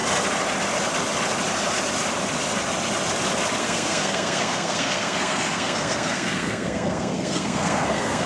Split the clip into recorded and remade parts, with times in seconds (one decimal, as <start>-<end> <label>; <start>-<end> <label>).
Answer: 0.0-3.6 recorded; 3.6-8.3 remade